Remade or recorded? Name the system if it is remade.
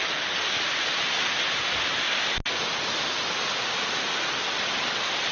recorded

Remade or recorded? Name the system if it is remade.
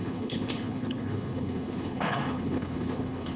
remade, codec, HILCodec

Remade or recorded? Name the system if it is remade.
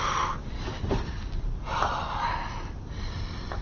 recorded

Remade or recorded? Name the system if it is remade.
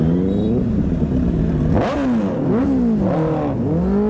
recorded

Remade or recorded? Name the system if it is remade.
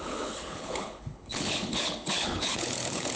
remade, codec, HILCodec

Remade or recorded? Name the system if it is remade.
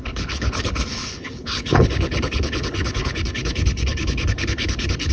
remade, codec, HILCodec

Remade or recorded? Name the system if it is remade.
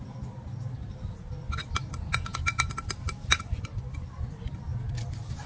recorded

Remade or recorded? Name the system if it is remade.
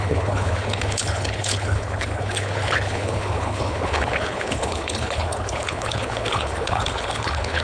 remade, codec, HILCodec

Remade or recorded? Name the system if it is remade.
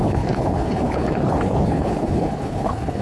remade, codec, HILCodec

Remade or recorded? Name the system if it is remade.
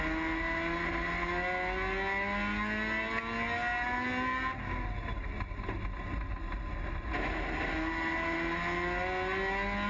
recorded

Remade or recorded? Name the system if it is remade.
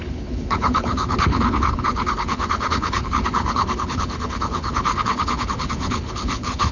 remade, codec, HILCodec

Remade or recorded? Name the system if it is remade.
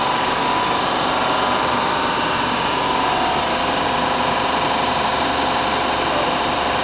recorded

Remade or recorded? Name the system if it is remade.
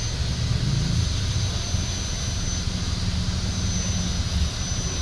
recorded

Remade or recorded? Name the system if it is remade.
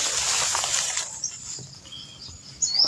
recorded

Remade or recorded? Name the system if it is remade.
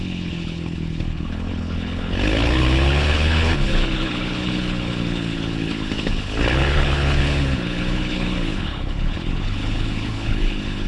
remade, codec, HILCodec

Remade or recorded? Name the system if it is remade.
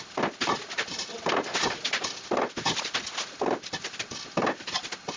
recorded